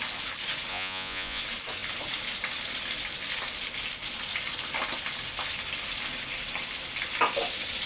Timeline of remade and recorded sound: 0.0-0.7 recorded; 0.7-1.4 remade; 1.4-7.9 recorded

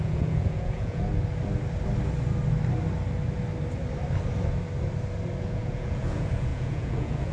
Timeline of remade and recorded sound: 0.0-1.1 remade; 1.1-5.5 recorded; 5.5-7.3 remade

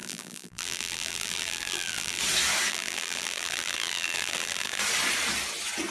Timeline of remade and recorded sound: 0.0-2.2 remade; 2.2-2.7 recorded; 2.7-4.8 remade; 4.8-5.9 recorded